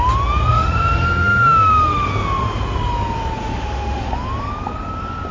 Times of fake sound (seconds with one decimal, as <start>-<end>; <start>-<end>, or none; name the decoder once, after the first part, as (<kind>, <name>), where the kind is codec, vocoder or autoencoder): 0.5-2.1 (autoencoder, DAC-VAE); 3.4-4.1